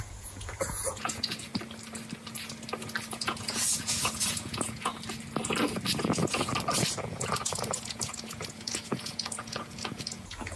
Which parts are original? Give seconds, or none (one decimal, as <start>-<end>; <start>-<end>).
1.5-3.1; 4.9-6.0; 6.5-7.0